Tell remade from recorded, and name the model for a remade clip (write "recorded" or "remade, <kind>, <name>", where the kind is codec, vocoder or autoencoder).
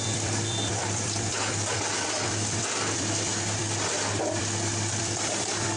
remade, vocoder, BigVGAN v2